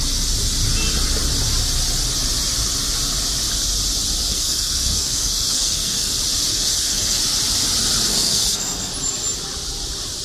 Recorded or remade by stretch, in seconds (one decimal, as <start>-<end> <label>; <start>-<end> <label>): 0.0-4.3 recorded; 4.3-6.1 remade; 6.1-6.5 recorded; 6.5-7.2 remade; 7.2-8.1 recorded; 8.1-8.9 remade; 8.9-10.2 recorded